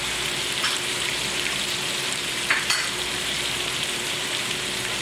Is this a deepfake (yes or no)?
yes